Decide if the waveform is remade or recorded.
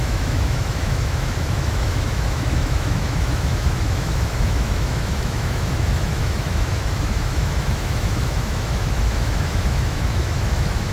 remade